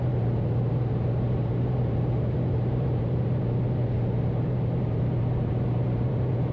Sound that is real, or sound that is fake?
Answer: fake